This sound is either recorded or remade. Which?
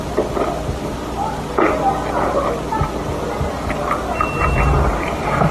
recorded